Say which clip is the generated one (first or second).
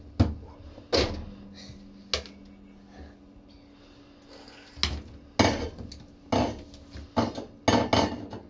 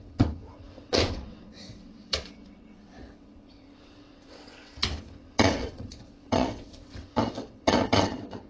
second